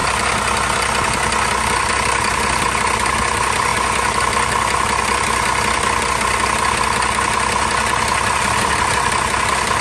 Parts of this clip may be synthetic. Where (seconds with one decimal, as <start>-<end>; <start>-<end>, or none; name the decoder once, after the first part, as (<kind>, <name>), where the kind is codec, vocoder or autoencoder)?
none